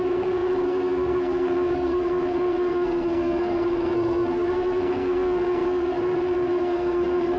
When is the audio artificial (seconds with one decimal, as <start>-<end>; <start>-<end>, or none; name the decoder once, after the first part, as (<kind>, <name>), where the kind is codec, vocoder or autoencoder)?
0.0-7.4 (codec, SNAC)